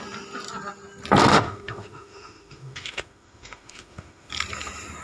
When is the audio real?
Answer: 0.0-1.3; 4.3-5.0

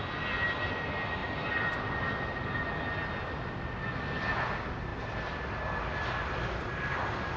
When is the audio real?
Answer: 0.0-7.4

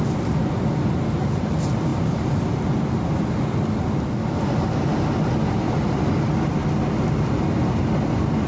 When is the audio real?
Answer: 0.0-8.5

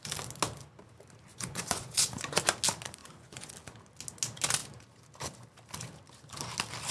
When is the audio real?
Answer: 0.0-1.3; 2.4-3.0; 3.5-6.9